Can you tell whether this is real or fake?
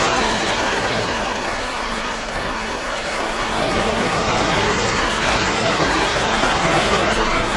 fake